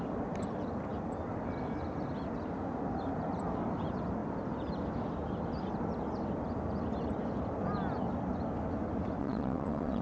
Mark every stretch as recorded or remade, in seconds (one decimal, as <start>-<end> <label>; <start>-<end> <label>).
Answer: 0.0-9.2 recorded; 9.2-10.0 remade